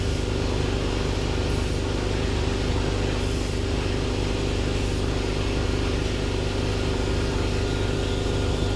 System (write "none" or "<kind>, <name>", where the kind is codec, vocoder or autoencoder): none